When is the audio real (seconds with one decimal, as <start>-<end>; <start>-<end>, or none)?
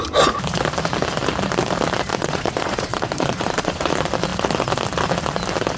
0.0-2.1; 3.9-5.8